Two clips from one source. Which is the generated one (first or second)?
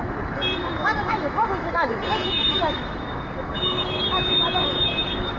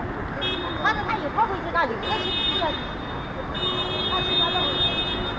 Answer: first